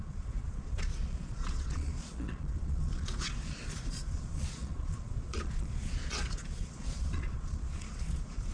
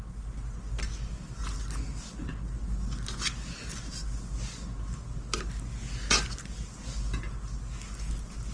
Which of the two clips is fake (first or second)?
first